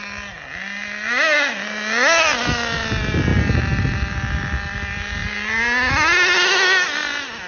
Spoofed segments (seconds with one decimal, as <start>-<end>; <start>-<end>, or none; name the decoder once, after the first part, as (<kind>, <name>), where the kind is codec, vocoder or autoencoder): none